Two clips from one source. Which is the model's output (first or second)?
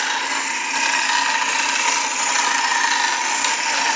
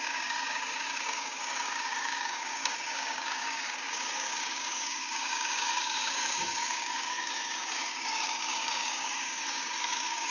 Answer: second